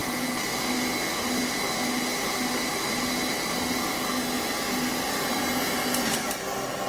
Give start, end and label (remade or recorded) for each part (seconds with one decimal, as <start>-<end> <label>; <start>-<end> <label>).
0.0-6.9 recorded

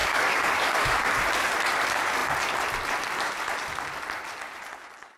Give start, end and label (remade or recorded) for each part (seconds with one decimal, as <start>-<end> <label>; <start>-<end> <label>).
0.0-1.2 remade; 1.2-5.2 recorded

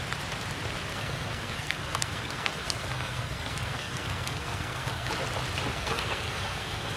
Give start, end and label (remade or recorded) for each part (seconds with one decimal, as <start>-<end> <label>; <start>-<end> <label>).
0.0-0.9 recorded; 0.9-5.1 remade; 5.1-5.7 recorded; 5.7-7.0 remade

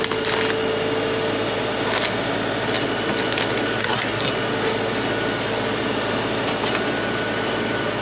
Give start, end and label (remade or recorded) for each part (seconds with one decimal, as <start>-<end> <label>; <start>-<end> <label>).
0.0-3.8 recorded; 3.8-4.3 remade; 4.3-8.0 recorded

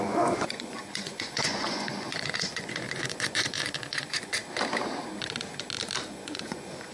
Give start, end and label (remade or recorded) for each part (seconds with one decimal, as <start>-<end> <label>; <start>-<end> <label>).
0.0-4.4 remade; 4.4-6.1 recorded; 6.1-6.9 remade

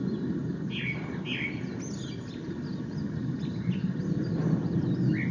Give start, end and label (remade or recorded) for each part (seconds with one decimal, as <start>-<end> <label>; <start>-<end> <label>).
0.0-5.3 recorded

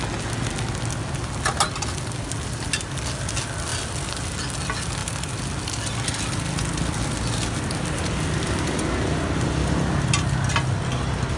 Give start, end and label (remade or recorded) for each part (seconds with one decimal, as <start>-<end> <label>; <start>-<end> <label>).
0.0-11.4 recorded